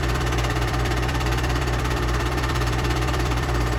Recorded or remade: remade